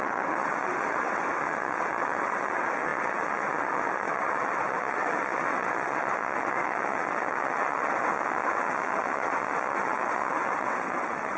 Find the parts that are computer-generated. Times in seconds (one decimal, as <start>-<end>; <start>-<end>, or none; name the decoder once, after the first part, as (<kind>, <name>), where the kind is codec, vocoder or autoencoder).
0.0-11.4 (vocoder, WaveNeXt)